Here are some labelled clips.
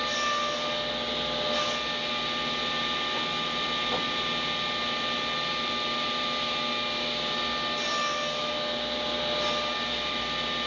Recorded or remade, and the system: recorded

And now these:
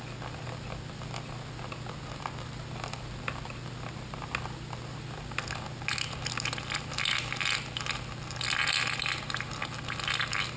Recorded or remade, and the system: recorded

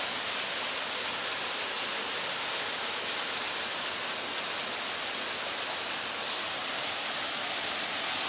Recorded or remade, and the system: recorded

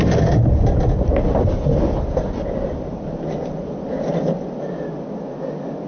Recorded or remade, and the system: recorded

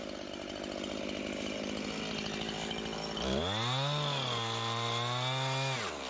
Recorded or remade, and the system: recorded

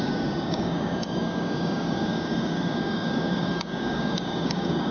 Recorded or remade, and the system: remade, codec, DAC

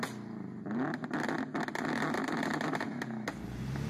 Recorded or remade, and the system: recorded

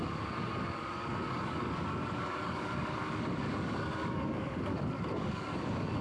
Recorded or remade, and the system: remade, codec, DAC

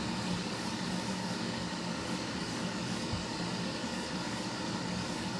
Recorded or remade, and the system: remade, codec, DAC